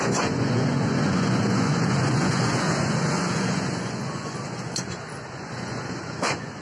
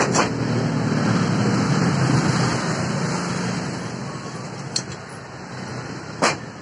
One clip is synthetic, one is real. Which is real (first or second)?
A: second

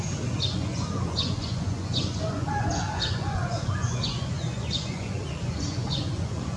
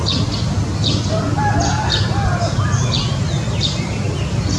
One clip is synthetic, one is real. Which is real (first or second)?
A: second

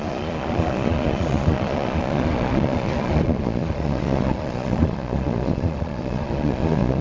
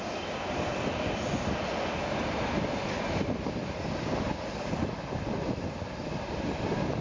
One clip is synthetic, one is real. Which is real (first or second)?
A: second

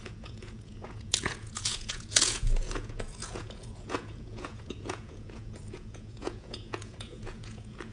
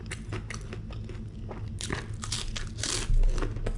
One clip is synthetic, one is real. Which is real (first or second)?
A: second